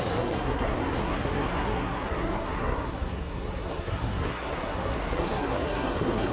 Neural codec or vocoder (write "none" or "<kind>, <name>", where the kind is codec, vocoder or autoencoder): codec, SNAC